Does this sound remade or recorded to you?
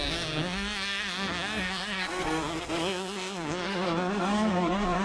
remade